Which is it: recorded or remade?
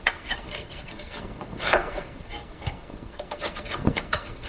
remade